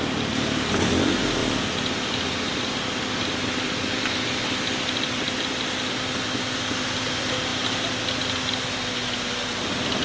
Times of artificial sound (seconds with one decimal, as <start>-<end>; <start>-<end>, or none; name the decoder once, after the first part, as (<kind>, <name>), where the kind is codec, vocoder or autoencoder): none